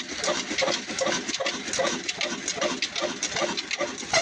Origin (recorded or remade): recorded